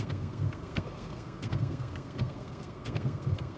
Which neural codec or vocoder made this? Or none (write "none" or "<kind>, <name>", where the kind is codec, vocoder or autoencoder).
codec, SNAC